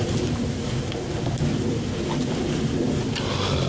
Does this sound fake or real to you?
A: real